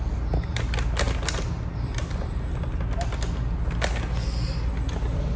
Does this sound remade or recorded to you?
recorded